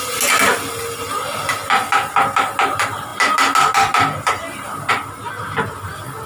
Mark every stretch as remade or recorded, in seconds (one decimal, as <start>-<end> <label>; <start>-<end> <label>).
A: 0.0-6.3 recorded